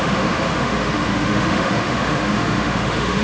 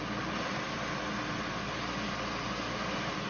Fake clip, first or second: first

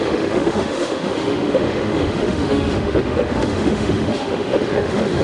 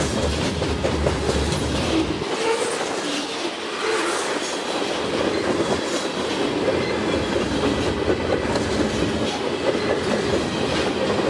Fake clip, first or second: first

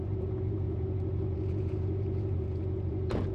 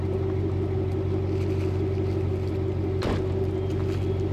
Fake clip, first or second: first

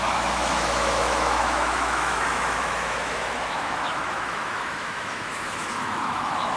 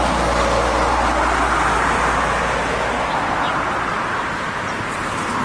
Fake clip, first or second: first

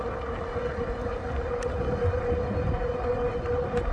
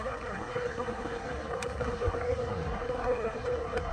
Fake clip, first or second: second